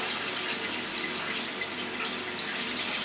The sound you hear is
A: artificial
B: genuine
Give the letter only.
B